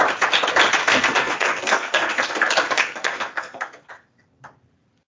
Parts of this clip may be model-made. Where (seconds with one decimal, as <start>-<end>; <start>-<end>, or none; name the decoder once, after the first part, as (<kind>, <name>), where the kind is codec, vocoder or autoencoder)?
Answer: 0.8-3.9 (codec, SNAC)